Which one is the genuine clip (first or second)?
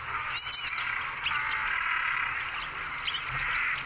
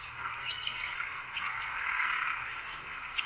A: first